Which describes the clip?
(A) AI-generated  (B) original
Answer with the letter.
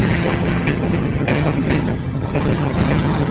A